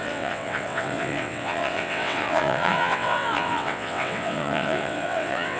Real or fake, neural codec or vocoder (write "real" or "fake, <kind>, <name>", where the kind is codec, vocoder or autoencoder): fake, vocoder, WaveNeXt